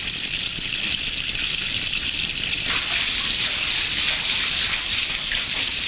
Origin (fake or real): real